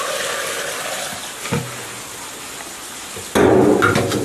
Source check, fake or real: real